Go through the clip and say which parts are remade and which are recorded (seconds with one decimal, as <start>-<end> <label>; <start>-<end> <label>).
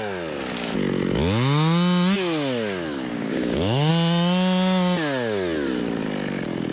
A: 0.0-3.1 recorded; 3.1-3.9 remade; 3.9-6.7 recorded